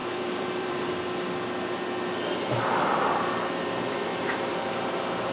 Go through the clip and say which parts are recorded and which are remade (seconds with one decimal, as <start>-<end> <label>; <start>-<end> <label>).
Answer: 0.0-0.9 remade; 0.9-4.1 recorded; 4.1-5.3 remade